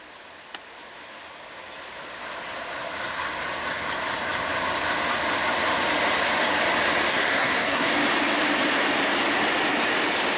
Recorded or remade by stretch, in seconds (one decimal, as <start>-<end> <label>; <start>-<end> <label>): 0.0-7.1 recorded; 7.1-7.9 remade; 7.9-10.4 recorded